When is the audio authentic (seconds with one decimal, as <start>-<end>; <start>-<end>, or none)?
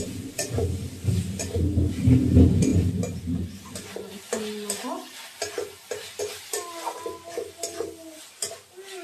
0.0-9.0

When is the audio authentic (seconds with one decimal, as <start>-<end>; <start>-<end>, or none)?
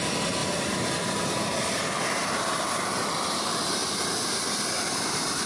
0.0-0.4; 1.8-3.8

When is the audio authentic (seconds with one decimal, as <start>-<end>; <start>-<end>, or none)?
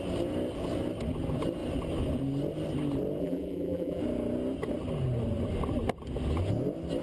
0.0-3.2; 4.0-7.0